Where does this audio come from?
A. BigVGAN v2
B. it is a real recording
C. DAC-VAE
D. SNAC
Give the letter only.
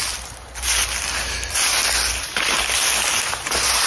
B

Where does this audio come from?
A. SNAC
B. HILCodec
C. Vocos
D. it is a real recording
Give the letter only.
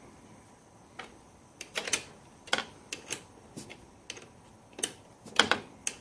D